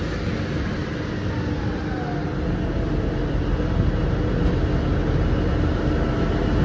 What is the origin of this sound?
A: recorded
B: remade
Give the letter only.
A